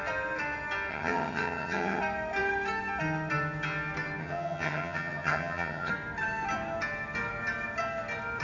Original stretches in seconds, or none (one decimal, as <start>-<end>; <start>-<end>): 0.0-0.9; 2.0-4.2; 5.9-8.4

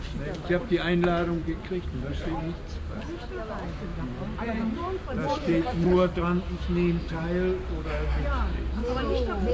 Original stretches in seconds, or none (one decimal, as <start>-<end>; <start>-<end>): 0.0-1.4; 2.1-3.9; 6.2-9.5

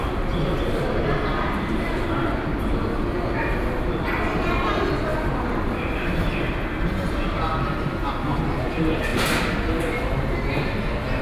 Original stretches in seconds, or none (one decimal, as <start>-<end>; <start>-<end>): 0.0-11.2

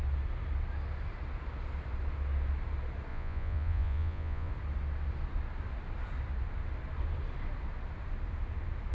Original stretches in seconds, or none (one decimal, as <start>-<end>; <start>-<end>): 0.0-3.1; 4.5-8.9

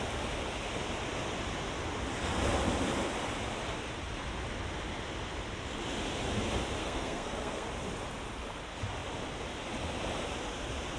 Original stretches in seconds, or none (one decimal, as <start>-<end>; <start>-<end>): 0.0-6.8; 7.7-11.0

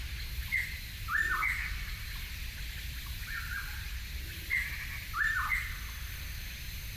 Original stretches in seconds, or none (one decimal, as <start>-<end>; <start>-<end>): 0.0-7.0

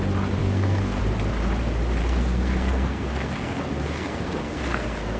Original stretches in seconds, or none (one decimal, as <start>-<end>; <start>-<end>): 0.0-0.4; 1.0-2.0